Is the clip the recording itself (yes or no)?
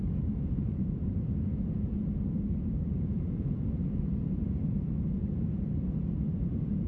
no